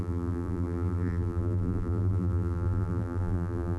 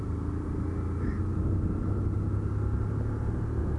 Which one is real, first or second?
second